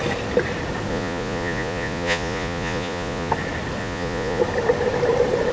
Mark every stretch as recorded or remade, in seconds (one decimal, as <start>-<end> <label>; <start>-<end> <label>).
0.0-0.9 recorded; 0.9-3.3 remade; 3.3-3.8 recorded; 3.8-4.4 remade; 4.4-5.5 recorded